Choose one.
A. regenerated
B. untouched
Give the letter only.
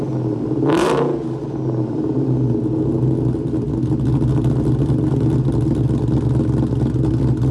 B